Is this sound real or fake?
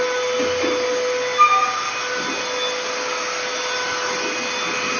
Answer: real